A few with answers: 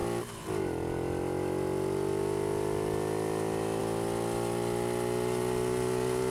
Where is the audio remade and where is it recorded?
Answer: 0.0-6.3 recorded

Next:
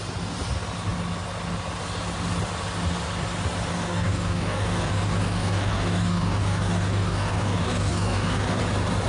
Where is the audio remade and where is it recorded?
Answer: 0.0-3.7 recorded; 3.7-8.6 remade; 8.6-9.1 recorded

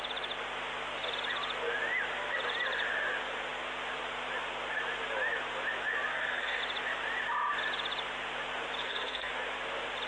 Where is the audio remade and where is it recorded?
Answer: 0.0-6.1 recorded; 6.1-6.6 remade; 6.6-8.8 recorded; 8.8-9.3 remade; 9.3-10.1 recorded

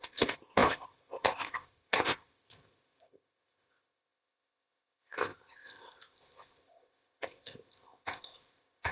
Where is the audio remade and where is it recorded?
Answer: 0.0-8.9 remade

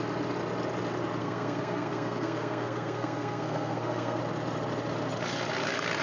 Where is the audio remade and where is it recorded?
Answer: 0.0-1.2 recorded; 1.2-4.2 remade; 4.2-6.0 recorded